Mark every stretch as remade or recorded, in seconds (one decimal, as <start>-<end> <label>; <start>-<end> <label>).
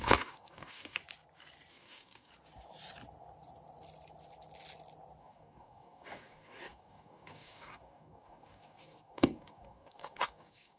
0.0-1.0 remade; 1.0-1.7 recorded; 1.7-2.3 remade; 2.3-5.2 recorded; 5.2-10.8 remade